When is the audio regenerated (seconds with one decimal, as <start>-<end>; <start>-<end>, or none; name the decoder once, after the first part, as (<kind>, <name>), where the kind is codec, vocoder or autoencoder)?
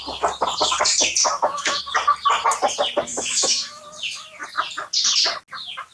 1.2-1.8 (autoencoder, DAC-VAE); 3.1-3.8